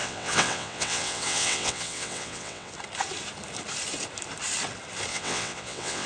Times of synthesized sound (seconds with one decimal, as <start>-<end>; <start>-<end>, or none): 0.0-2.7; 5.1-6.1